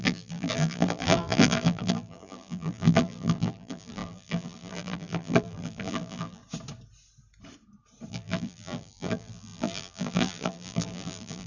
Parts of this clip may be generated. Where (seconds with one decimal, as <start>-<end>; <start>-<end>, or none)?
0.0-6.4; 8.1-11.5